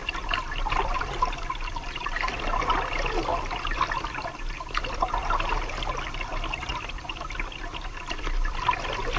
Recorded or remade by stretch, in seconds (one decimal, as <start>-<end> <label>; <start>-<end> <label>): 0.0-2.6 remade; 2.6-3.3 recorded; 3.3-5.2 remade; 5.2-6.7 recorded; 6.7-9.2 remade